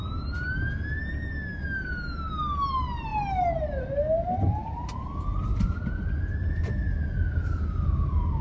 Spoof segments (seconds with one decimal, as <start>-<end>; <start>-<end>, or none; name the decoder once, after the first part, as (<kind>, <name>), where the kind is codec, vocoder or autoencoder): 5.3-6.1 (vocoder, BigVGAN v2)